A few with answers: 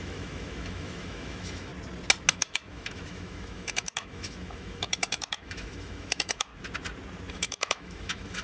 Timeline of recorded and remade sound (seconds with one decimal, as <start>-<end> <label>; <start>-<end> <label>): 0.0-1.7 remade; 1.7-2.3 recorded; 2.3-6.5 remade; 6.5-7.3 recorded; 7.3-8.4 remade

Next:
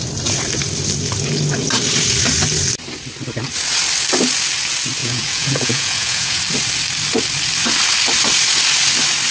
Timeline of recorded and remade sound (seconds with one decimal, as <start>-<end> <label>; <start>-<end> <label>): 0.0-5.0 recorded; 5.0-6.4 remade; 6.4-9.3 recorded

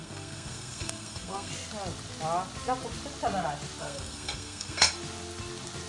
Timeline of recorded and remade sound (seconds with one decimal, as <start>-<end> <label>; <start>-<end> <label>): 0.0-1.5 remade; 1.5-3.8 recorded; 3.8-4.9 remade; 4.9-5.9 recorded

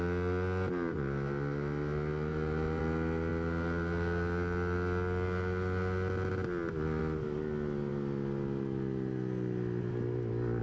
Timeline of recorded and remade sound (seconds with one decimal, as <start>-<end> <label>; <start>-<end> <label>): 0.0-2.3 recorded; 2.3-2.8 remade; 2.8-10.6 recorded

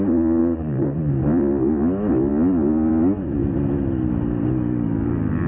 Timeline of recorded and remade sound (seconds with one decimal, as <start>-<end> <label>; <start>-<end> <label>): 0.0-0.4 recorded; 0.4-1.1 remade; 1.1-5.5 recorded

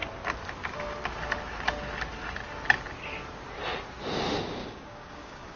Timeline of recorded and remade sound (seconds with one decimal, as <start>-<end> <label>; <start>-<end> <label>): 0.0-4.6 recorded; 4.6-5.6 remade

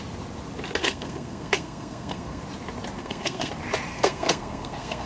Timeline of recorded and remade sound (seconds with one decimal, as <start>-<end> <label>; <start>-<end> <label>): 0.0-0.8 recorded; 0.8-2.4 remade; 2.4-3.0 recorded; 3.0-3.5 remade; 3.5-3.9 recorded; 3.9-5.1 remade